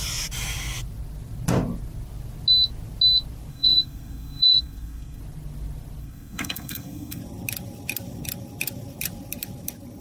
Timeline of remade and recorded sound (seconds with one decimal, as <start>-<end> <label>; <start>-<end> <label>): 0.0-3.5 recorded; 3.5-5.2 remade; 5.2-6.0 recorded; 6.0-7.2 remade; 7.2-10.0 recorded